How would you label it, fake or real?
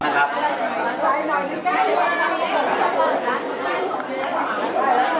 real